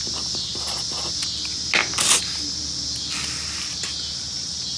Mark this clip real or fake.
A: real